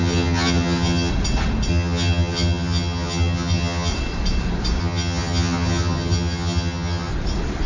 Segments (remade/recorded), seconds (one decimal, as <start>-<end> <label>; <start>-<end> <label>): 0.0-1.1 remade; 1.1-1.7 recorded; 1.7-3.9 remade; 3.9-4.8 recorded; 4.8-7.1 remade; 7.1-7.7 recorded